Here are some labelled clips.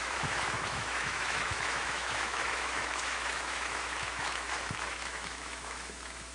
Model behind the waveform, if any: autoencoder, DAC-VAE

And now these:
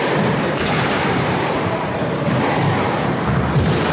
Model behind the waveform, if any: none